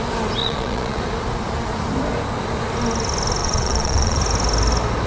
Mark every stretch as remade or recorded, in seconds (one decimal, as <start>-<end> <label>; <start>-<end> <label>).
0.0-0.4 recorded; 0.4-1.0 remade; 1.0-3.4 recorded; 3.4-4.2 remade; 4.2-5.1 recorded